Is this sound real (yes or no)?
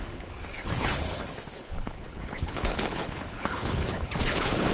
no